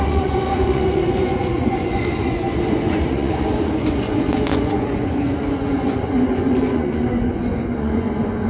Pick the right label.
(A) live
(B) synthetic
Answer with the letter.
B